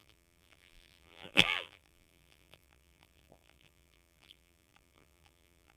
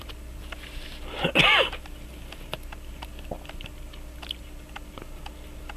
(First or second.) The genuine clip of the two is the second